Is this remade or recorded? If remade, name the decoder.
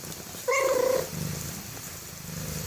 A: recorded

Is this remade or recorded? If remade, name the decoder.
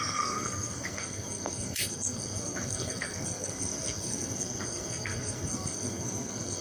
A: remade, codec, SNAC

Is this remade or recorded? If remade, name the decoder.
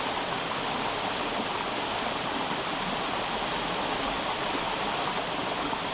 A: recorded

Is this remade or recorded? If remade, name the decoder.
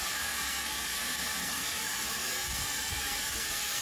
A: remade, codec, SNAC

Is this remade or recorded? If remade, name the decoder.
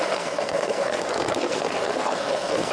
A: remade, codec, SNAC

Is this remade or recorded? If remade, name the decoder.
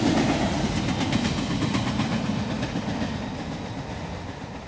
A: recorded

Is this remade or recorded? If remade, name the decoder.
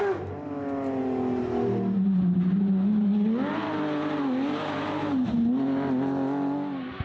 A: recorded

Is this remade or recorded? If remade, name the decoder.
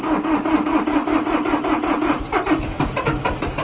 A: recorded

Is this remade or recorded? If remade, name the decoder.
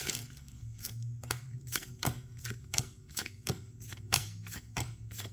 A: remade, codec, SNAC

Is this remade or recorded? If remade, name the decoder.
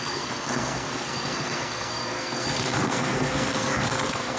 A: remade, codec, SNAC